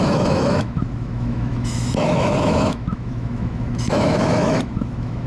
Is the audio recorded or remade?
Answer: remade